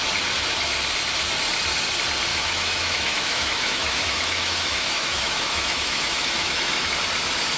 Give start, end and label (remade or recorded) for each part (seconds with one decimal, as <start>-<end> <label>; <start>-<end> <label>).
0.0-2.3 recorded; 2.3-6.9 remade; 6.9-7.6 recorded